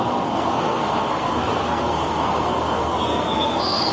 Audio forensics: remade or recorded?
remade